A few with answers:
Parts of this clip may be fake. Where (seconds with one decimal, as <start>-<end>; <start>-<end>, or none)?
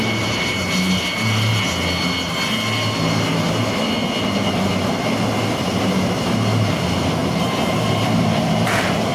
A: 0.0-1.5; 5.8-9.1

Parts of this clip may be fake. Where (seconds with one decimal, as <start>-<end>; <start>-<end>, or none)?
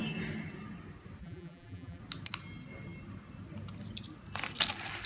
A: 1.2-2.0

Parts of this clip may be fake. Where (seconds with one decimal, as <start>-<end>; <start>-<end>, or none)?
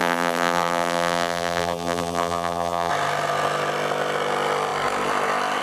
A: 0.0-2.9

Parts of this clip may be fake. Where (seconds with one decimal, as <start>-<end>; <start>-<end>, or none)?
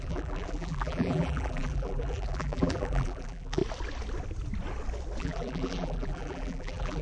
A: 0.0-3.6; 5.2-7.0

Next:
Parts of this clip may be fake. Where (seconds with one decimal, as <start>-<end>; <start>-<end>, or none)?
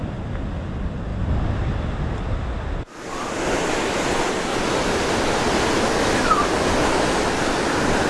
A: none